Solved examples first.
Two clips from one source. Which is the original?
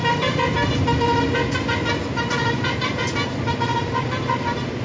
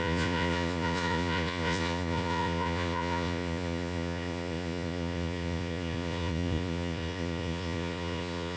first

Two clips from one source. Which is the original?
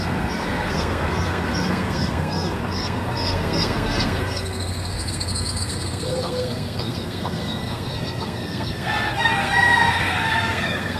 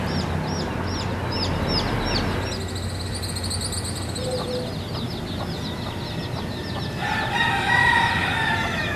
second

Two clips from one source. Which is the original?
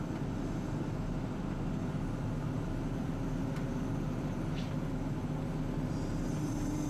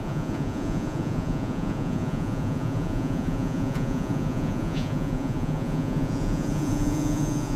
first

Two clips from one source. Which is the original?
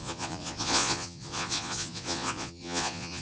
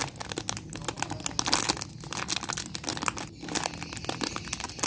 second